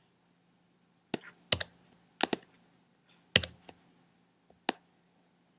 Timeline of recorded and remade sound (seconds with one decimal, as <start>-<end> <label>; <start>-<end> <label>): 0.0-5.6 recorded